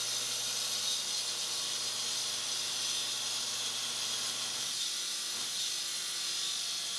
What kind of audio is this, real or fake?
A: real